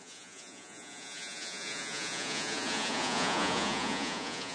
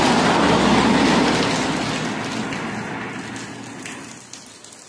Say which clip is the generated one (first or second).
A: first